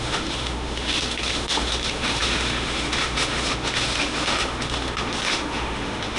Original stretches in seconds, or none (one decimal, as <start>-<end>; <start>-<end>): none